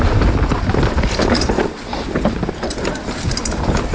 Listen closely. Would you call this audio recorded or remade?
recorded